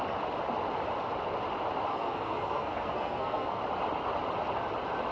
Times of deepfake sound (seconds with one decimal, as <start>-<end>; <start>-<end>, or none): 1.9-3.6